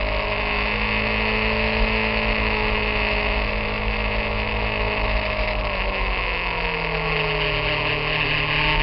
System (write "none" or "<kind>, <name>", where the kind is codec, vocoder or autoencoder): none